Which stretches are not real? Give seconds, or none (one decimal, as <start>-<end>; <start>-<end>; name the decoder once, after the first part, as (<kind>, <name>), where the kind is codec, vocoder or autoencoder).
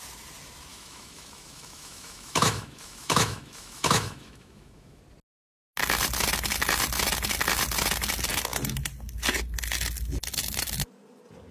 0.7-5.0 (autoencoder, DAC-VAE)